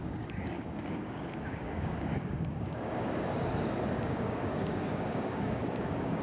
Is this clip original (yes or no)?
no